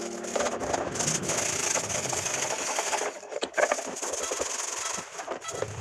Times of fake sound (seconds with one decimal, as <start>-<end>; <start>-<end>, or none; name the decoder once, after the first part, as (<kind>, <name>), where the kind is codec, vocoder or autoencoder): 1.6-3.6 (codec, DAC)